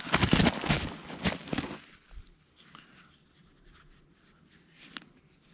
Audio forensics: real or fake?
real